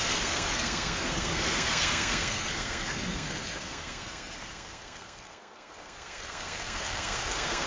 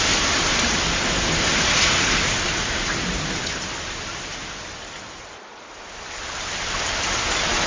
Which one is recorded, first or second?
second